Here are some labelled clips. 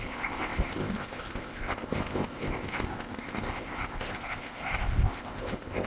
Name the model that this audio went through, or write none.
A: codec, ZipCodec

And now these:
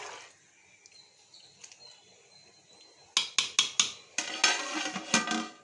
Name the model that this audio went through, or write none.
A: none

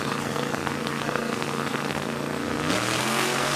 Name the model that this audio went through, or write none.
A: codec, SNAC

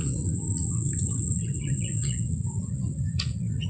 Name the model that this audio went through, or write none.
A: vocoder, Vocos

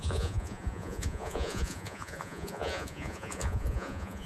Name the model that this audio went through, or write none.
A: vocoder, Vocos